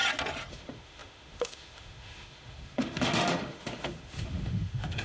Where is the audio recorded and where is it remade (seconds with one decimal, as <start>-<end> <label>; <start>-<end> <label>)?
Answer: 0.0-0.5 recorded; 0.5-5.0 remade